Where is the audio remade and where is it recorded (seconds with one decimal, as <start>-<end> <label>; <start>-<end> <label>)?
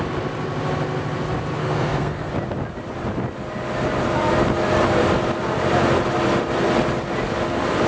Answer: 0.0-1.6 recorded; 1.6-2.3 remade; 2.3-7.9 recorded